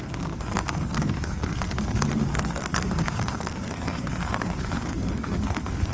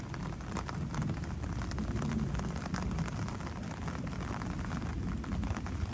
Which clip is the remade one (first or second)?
first